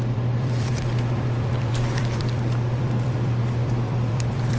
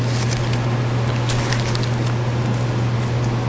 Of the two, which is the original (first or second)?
second